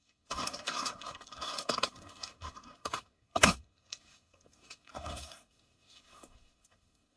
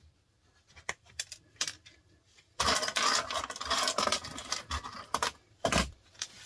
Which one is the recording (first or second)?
second